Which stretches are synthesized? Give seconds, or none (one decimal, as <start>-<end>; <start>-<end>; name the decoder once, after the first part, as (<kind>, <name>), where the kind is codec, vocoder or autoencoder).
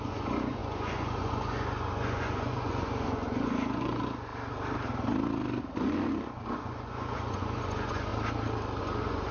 0.0-4.3 (vocoder, Vocos); 5.8-8.1; 8.8-9.3